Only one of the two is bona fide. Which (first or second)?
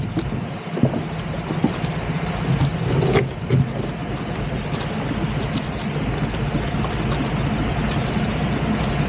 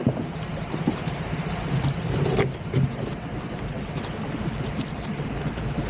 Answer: first